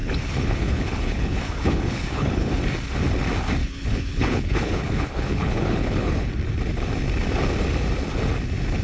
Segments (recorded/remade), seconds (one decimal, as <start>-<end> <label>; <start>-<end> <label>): 0.0-2.6 remade; 2.6-3.6 recorded; 3.6-6.3 remade; 6.3-8.8 recorded